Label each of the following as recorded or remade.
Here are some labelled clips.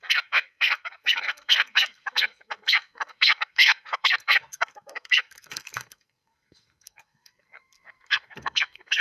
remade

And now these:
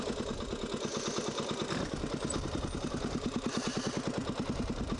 recorded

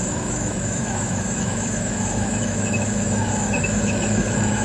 remade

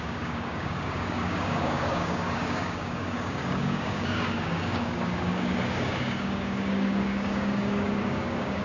remade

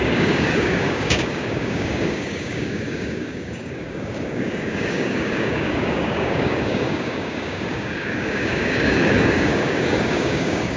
remade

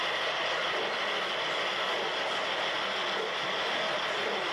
recorded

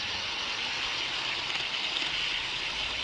recorded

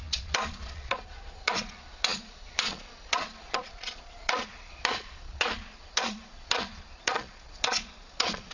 remade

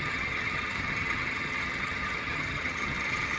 remade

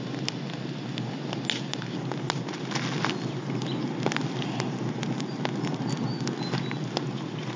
recorded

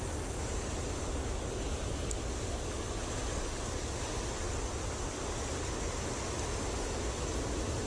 recorded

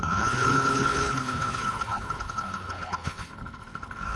remade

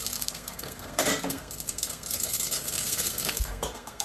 remade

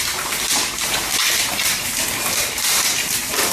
recorded